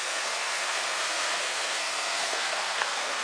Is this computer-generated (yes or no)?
yes